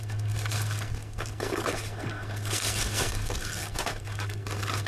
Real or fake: fake